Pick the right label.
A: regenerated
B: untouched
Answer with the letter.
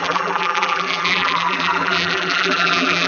A